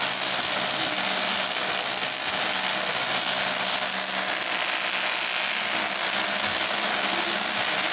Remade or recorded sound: recorded